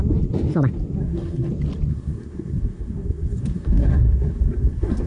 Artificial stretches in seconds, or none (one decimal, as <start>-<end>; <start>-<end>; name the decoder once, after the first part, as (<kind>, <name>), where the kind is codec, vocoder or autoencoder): 1.0-1.5 (codec, SNAC); 1.9-5.1